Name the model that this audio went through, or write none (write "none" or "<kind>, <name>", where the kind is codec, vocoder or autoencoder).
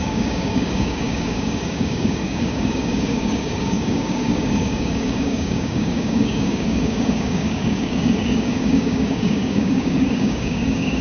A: codec, DAC